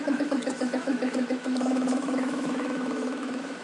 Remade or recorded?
remade